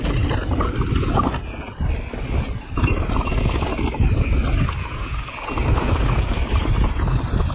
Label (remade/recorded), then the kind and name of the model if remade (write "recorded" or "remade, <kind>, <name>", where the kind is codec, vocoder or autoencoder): recorded